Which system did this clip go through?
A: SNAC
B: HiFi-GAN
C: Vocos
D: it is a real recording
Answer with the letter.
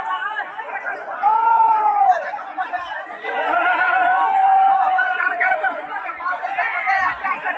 C